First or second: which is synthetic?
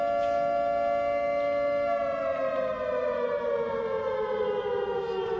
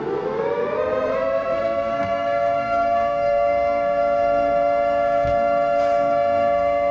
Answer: second